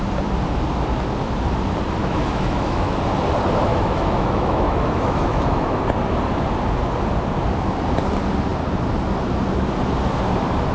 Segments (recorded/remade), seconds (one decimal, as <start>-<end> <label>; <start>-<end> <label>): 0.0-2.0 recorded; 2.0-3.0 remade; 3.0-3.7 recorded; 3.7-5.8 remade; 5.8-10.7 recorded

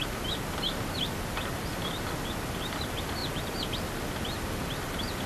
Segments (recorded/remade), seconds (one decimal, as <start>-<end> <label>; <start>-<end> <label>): 0.0-5.3 recorded

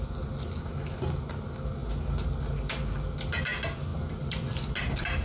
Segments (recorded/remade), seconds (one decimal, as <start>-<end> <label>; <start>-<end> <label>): 0.0-5.2 recorded

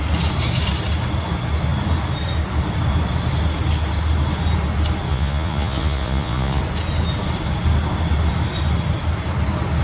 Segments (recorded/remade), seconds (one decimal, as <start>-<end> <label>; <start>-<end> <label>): 0.0-5.1 recorded; 5.1-6.6 remade; 6.6-9.8 recorded

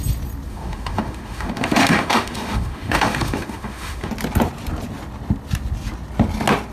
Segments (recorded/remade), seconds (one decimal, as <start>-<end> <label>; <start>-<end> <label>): 0.0-0.5 recorded; 0.5-4.1 remade; 4.1-6.7 recorded

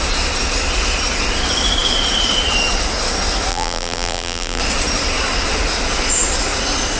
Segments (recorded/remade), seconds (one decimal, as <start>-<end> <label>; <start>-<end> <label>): 0.0-3.5 recorded; 3.5-4.6 remade; 4.6-7.0 recorded

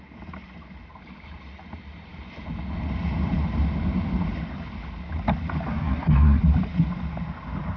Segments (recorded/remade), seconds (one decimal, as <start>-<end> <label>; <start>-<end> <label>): 0.0-5.7 recorded; 5.7-6.4 remade; 6.4-7.8 recorded

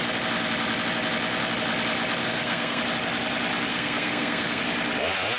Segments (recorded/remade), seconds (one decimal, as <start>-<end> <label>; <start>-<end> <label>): 0.0-2.2 recorded; 2.2-2.8 remade; 2.8-3.7 recorded; 3.7-4.6 remade; 4.6-5.4 recorded